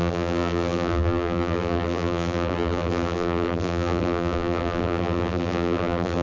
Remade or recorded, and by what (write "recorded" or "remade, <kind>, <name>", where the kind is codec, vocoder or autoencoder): remade, vocoder, BigVGAN v2